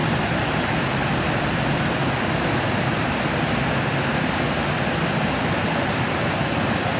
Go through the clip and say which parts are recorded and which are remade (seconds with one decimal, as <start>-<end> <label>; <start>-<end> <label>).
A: 0.0-7.0 recorded